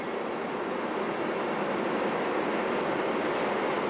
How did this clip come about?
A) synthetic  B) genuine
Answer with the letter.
B